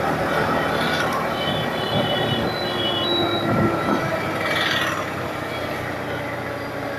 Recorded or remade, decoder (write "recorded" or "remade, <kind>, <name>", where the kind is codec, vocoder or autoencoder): recorded